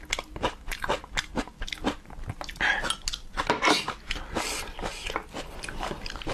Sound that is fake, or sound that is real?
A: real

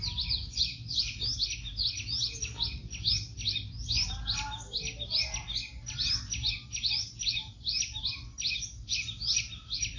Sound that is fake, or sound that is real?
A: real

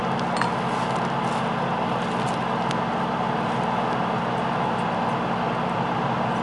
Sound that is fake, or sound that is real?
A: real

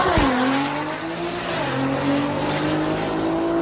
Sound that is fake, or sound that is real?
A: real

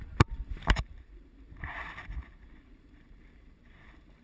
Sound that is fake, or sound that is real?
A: fake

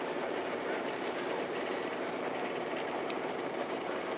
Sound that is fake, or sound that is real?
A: fake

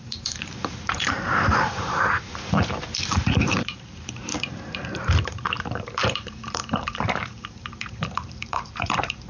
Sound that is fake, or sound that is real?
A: fake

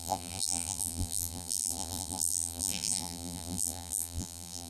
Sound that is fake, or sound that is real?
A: fake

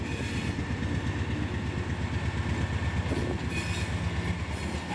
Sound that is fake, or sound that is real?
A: real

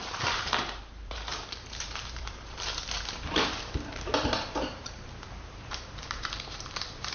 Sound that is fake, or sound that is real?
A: fake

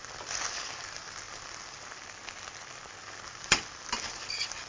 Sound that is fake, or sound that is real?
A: fake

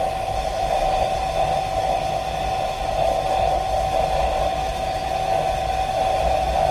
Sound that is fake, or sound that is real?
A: real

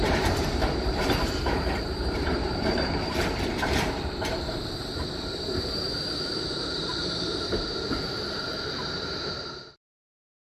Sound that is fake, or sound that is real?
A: fake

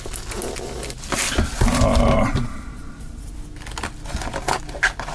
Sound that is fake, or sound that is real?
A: real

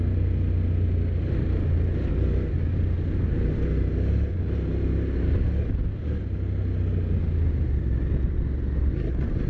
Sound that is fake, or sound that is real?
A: real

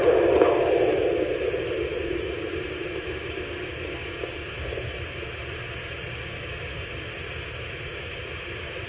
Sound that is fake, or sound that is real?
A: real